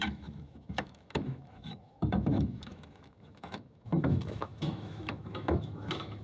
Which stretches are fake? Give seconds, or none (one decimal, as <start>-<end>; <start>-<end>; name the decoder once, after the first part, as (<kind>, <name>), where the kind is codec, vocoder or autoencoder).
0.0-6.2 (autoencoder, DAC-VAE)